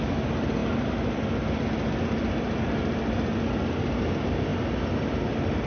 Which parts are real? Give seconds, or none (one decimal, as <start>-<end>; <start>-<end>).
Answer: 0.0-5.7